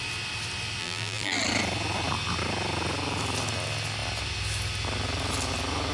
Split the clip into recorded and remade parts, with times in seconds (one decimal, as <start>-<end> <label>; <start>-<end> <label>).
0.0-0.8 recorded; 0.8-1.4 remade; 1.4-5.9 recorded